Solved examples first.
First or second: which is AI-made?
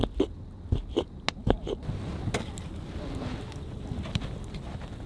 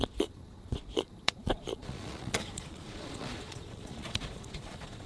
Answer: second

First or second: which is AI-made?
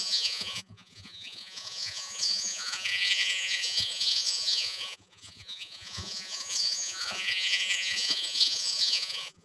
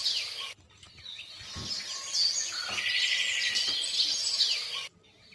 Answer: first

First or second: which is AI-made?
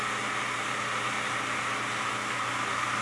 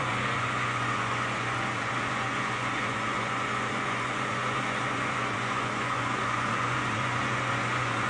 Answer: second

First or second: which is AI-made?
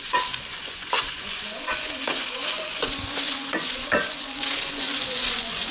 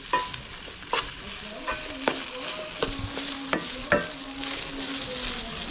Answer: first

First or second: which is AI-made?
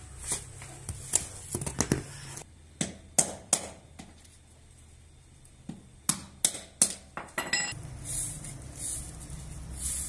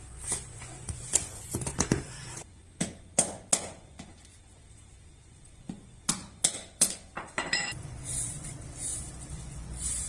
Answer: second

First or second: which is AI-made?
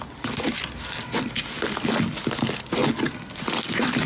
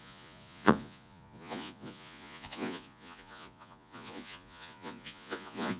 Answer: second